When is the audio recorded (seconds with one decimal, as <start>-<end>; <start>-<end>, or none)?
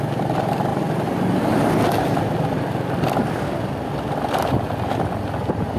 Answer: 0.0-5.8